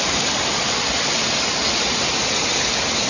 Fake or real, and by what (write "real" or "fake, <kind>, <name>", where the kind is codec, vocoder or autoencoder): real